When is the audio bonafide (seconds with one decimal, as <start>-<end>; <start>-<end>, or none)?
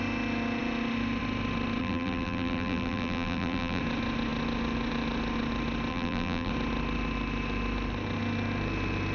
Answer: 0.0-1.8; 3.8-5.9; 6.5-9.1